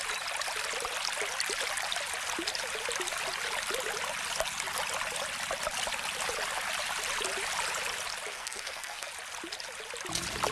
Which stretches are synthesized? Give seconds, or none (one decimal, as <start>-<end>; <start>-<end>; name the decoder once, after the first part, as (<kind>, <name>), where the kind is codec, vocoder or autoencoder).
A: 8.3-9.1 (codec, SNAC)